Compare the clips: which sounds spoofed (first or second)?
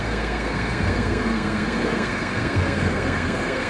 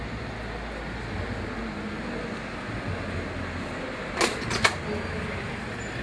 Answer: first